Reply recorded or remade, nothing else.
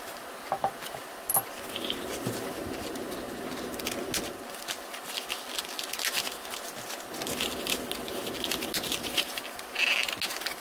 recorded